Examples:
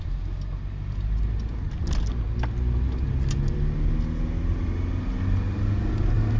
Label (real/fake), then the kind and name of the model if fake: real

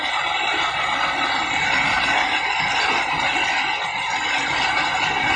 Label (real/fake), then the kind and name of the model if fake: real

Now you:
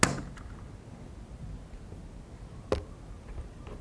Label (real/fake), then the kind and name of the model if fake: real